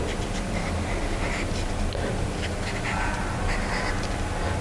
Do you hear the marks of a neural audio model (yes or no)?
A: no